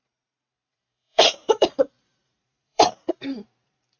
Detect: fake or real fake